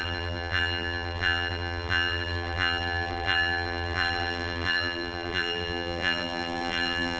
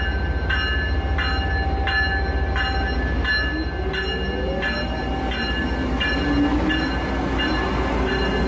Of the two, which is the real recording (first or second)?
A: second